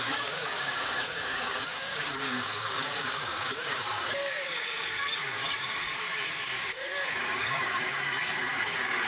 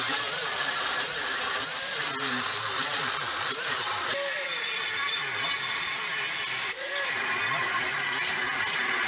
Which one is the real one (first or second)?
second